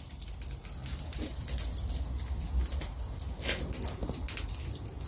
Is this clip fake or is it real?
real